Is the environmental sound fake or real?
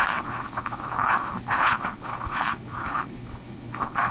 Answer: fake